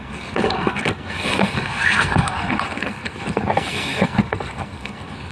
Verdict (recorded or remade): remade